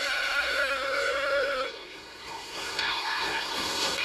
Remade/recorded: remade